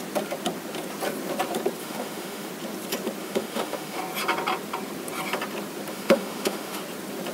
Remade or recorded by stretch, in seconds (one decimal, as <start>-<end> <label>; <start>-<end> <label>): 0.0-1.8 recorded; 1.8-2.5 remade; 2.5-3.2 recorded; 3.2-4.0 remade; 4.0-5.9 recorded; 5.9-6.8 remade; 6.8-7.3 recorded

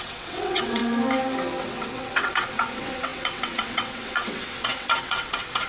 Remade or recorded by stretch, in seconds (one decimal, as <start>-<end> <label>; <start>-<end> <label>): 0.0-0.8 remade; 0.8-1.6 recorded; 1.6-5.7 remade

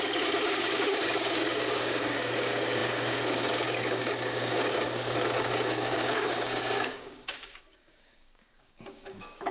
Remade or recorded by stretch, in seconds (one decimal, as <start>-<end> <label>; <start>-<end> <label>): 0.0-9.5 remade

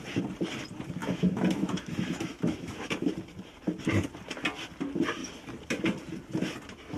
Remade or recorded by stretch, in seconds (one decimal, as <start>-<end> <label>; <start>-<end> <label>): 0.0-1.0 recorded; 1.0-3.1 remade; 3.1-7.0 recorded

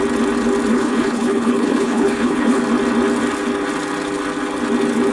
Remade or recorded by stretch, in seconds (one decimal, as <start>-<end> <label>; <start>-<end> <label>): 0.0-0.7 recorded; 0.7-2.6 remade; 2.6-5.1 recorded

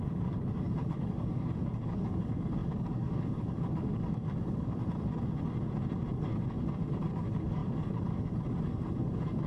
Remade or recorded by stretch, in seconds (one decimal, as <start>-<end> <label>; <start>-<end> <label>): 0.0-4.8 remade; 4.8-6.1 recorded; 6.1-9.5 remade

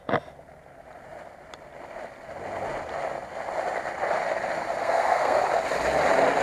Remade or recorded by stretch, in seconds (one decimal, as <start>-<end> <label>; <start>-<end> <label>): 0.0-4.8 recorded; 4.8-5.4 remade; 5.4-6.4 recorded